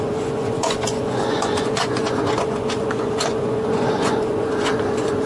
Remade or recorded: remade